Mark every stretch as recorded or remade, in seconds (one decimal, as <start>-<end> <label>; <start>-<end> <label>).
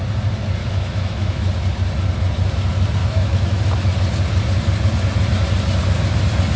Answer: 0.0-0.6 recorded; 0.6-1.5 remade; 1.5-3.0 recorded; 3.0-3.6 remade; 3.6-6.6 recorded